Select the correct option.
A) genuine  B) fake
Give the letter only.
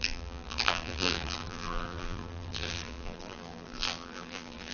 B